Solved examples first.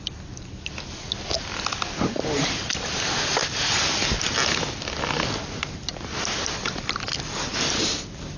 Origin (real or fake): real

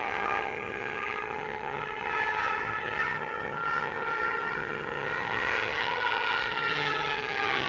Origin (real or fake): fake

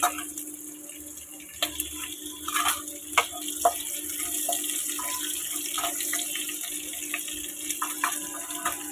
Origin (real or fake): real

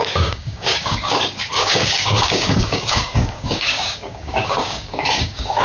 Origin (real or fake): fake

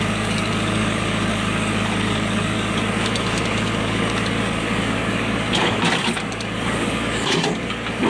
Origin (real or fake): fake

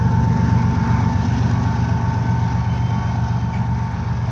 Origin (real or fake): real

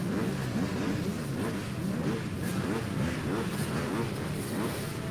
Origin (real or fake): real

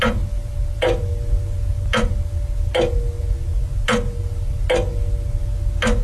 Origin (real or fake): real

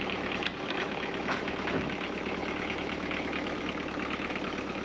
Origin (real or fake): fake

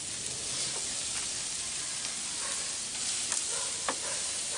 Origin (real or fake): real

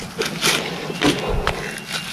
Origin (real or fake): real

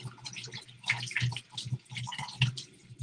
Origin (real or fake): real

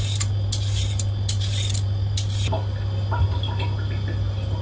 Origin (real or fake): real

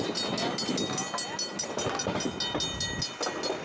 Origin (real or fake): real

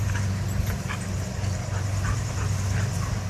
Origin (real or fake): real